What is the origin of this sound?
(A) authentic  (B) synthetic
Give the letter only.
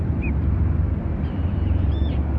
B